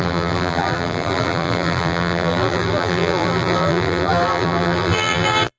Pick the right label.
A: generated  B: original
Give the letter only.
A